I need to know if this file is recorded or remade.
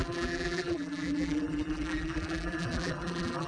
remade